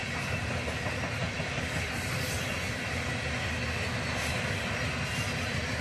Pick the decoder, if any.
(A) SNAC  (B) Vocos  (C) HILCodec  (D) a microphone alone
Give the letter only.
D